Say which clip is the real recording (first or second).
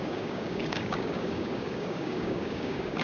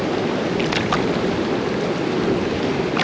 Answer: second